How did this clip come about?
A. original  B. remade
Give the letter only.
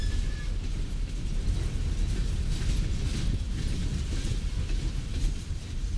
A